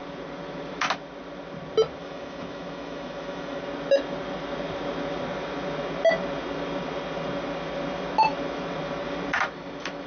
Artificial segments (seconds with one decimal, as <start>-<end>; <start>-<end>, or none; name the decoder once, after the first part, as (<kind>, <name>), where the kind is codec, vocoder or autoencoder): 2.0-3.6 (autoencoder, DAC-VAE)